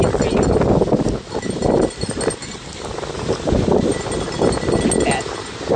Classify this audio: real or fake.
real